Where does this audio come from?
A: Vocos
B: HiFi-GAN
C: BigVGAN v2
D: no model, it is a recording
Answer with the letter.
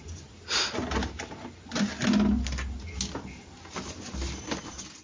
D